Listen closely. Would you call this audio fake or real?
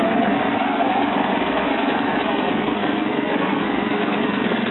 fake